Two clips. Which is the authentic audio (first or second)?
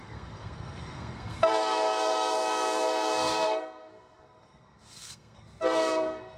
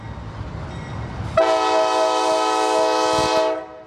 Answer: second